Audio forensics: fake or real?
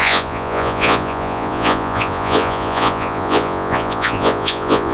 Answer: fake